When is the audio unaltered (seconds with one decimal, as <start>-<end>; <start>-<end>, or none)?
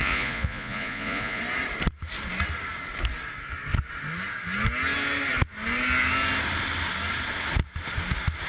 1.4-8.5